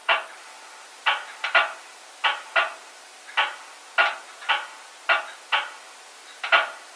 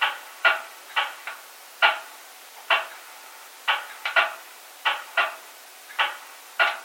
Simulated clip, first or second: second